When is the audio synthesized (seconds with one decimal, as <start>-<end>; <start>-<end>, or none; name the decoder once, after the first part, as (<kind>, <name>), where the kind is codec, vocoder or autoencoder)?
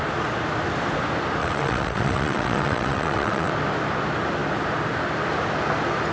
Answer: 1.4-3.5 (vocoder, WaveNeXt)